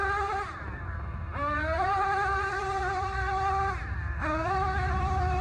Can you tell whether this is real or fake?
fake